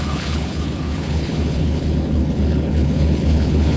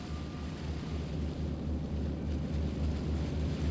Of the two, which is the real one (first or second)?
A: second